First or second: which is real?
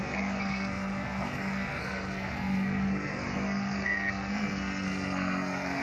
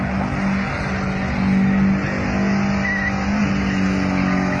second